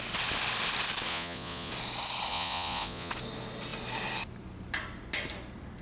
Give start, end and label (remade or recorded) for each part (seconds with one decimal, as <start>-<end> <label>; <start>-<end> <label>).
0.0-1.1 recorded; 1.1-1.7 remade; 1.7-2.3 recorded; 2.3-3.1 remade; 3.1-5.8 recorded